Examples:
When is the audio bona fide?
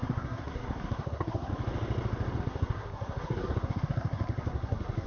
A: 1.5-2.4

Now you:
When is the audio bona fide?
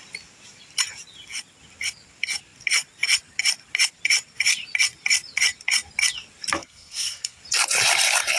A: 0.0-6.6; 7.4-8.4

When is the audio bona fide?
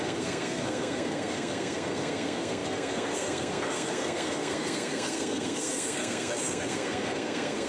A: none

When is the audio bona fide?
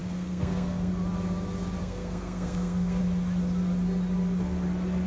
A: 0.9-1.8; 3.0-5.1